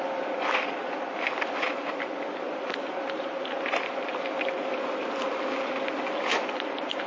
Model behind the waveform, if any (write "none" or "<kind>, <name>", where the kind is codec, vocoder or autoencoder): none